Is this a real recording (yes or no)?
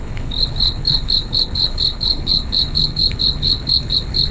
no